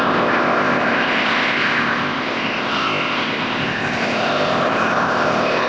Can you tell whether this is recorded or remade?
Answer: remade